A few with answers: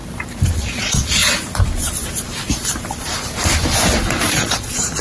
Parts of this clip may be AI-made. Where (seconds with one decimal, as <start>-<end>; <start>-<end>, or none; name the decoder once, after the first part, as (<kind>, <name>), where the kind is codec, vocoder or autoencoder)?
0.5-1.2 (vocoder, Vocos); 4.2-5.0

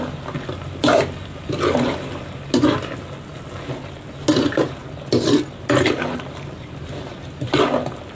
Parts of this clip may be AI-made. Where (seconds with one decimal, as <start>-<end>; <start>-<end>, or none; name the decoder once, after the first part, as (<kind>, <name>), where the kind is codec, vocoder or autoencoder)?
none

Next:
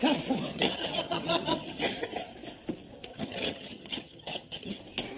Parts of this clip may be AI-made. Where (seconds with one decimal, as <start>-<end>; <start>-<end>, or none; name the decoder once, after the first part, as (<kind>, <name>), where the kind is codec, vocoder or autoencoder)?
0.5-1.8 (vocoder, HiFi-GAN); 3.1-4.8

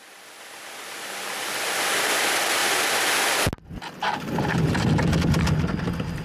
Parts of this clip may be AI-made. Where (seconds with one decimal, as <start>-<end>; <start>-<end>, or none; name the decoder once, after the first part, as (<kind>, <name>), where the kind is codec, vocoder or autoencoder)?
none

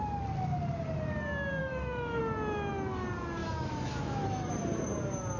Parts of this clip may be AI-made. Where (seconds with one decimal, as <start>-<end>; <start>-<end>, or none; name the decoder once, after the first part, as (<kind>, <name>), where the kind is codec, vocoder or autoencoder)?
1.6-2.2 (autoencoder, DAC-VAE); 3.4-4.5

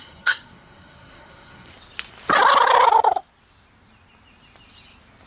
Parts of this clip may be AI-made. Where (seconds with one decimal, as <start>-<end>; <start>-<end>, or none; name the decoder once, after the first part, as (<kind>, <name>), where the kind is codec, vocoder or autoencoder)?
0.0-1.7 (codec, SNAC)